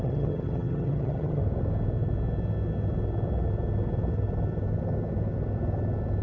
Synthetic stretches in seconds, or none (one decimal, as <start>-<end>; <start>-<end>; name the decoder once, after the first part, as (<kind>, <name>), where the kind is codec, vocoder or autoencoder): 0.0-1.4 (vocoder, HiFi-GAN)